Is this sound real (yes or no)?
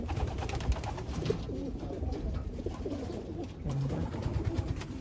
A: no